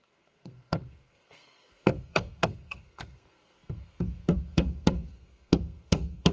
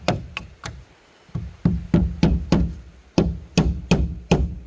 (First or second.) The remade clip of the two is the first